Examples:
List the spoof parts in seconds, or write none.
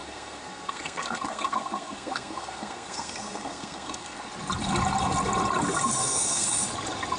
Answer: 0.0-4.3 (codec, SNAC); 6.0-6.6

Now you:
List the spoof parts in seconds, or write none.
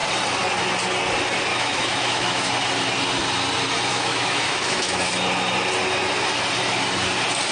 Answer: 1.5-2.5 (autoencoder, DAC-VAE); 3.9-5.1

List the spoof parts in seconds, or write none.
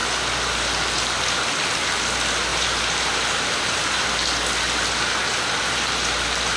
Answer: 2.5-4.2 (vocoder, BigVGAN v2)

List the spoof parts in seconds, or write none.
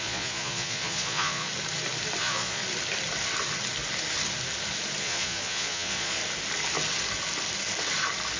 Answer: 0.0-1.5 (vocoder, Vocos); 2.2-2.6; 5.0-6.2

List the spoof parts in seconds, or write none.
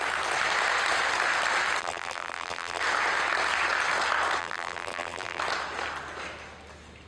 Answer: 1.8-2.8 (vocoder, BigVGAN v2); 4.4-5.4